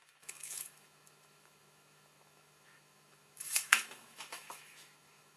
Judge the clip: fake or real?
fake